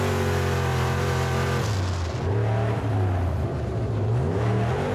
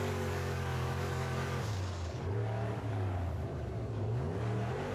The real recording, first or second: first